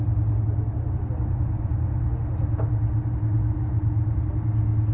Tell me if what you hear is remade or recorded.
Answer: recorded